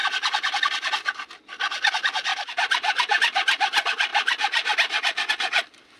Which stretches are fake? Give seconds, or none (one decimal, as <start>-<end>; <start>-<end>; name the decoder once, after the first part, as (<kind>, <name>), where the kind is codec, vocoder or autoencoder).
0.0-0.6 (vocoder, BigVGAN v2); 2.3-3.2; 4.1-5.3